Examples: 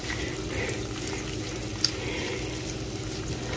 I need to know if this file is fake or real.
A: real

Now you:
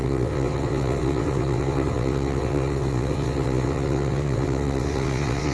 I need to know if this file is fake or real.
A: fake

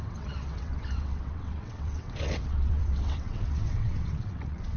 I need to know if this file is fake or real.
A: fake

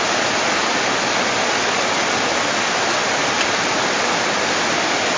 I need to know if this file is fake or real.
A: real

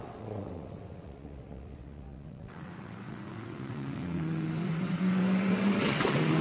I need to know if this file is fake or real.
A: fake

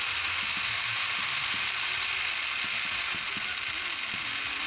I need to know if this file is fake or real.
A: real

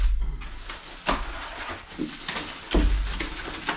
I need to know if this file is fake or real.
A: real